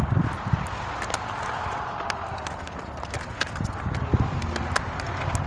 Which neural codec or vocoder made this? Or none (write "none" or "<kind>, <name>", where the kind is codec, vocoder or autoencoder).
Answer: none